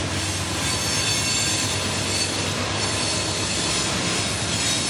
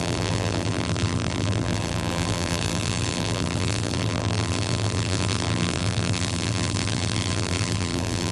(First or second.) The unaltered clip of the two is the first